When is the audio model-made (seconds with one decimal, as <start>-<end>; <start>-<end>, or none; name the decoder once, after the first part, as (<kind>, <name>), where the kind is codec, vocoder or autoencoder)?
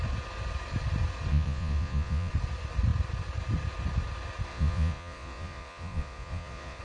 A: 1.3-2.3 (vocoder, Vocos); 4.5-6.8